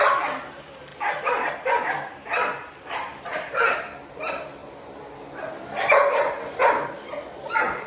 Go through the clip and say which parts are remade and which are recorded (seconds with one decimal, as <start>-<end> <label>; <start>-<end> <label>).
0.0-0.9 remade; 0.9-1.5 recorded; 1.5-7.9 remade